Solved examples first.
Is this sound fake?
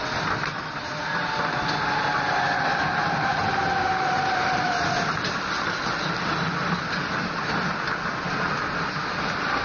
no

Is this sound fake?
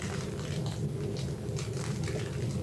no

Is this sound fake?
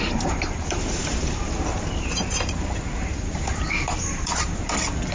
yes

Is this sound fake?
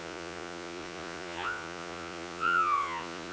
yes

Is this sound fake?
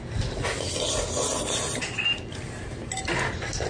no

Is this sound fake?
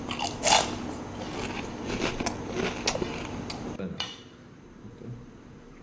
no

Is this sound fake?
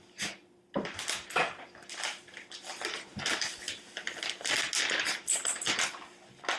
no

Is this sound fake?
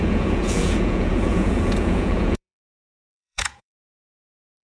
yes